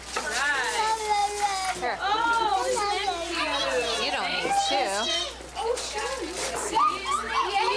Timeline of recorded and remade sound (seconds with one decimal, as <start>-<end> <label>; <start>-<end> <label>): 0.0-7.8 recorded